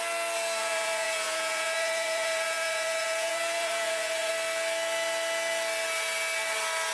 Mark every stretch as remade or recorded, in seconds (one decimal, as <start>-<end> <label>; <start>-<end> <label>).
0.0-0.6 recorded; 0.6-4.3 remade; 4.3-6.9 recorded